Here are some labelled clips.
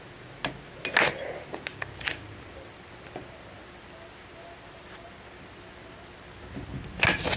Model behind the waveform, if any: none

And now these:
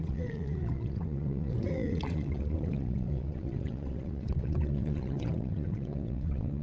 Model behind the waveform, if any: vocoder, WaveNeXt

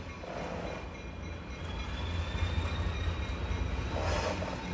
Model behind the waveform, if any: none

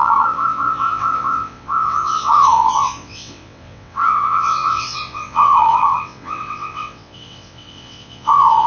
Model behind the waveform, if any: vocoder, WaveNeXt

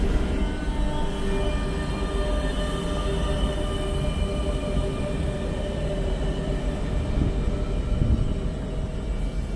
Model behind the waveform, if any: none